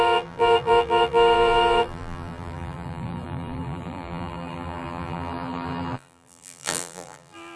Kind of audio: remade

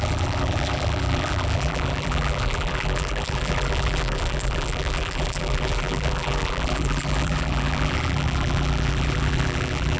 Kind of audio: remade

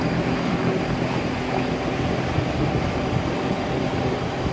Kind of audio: recorded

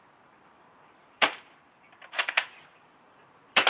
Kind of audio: remade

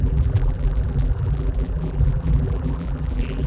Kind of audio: remade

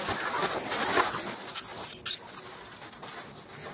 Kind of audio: recorded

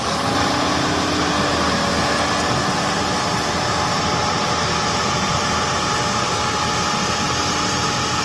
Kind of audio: recorded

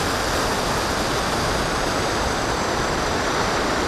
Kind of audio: recorded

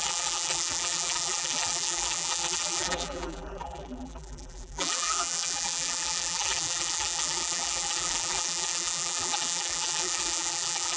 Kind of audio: remade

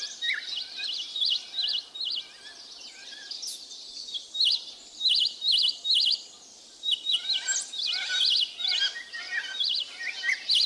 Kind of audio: recorded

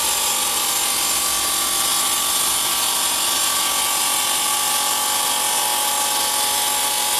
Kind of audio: recorded